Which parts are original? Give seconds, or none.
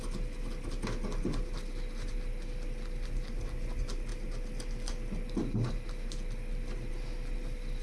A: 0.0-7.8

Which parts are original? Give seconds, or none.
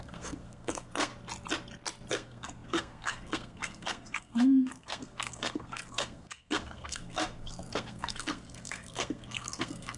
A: 1.1-2.1